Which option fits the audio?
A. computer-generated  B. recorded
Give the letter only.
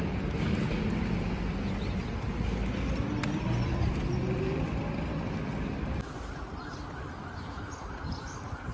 B